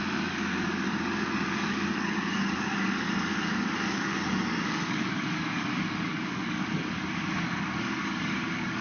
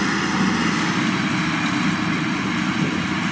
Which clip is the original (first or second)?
second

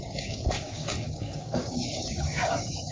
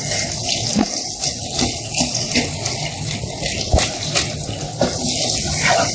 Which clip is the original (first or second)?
second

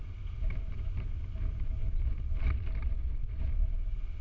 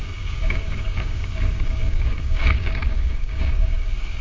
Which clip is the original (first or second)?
first